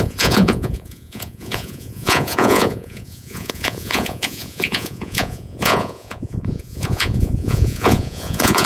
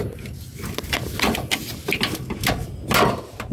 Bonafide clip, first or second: second